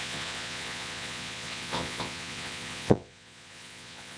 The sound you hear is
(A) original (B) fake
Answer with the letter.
B